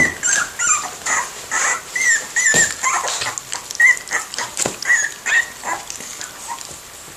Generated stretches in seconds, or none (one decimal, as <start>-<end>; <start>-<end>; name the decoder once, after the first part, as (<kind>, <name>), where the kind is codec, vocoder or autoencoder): none